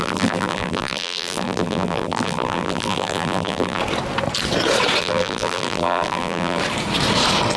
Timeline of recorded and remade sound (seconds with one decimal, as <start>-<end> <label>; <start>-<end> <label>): 0.0-3.8 remade; 3.8-5.0 recorded; 5.0-6.6 remade; 6.6-7.6 recorded